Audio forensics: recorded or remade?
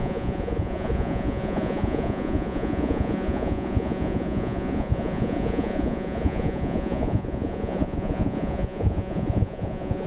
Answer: remade